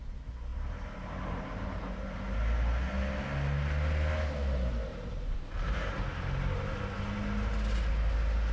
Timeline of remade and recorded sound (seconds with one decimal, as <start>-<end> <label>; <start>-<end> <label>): 0.0-0.5 recorded; 0.5-1.8 remade; 1.8-4.9 recorded; 4.9-6.0 remade; 6.0-8.5 recorded